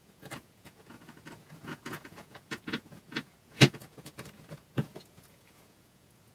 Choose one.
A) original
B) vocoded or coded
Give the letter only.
B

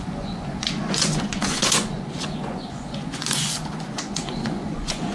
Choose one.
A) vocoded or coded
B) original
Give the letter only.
A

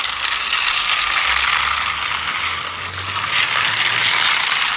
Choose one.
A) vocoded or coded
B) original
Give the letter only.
B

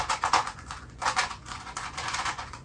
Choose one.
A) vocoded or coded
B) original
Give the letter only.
A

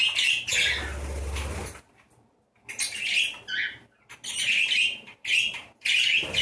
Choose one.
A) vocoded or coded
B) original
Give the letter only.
B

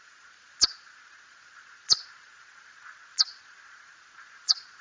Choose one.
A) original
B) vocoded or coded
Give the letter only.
B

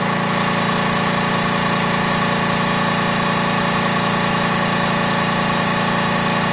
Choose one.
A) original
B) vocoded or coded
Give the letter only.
A